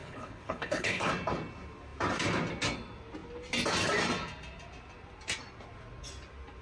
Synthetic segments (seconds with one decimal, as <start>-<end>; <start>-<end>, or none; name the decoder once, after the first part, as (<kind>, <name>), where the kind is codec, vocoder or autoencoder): 0.0-1.1 (codec, HILCodec)